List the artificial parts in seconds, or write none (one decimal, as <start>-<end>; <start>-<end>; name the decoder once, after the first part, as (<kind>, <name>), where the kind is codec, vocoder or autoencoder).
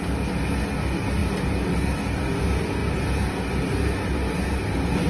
none